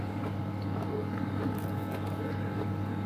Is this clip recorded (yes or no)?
no